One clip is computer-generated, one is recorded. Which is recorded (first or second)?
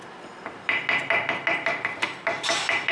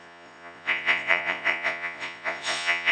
first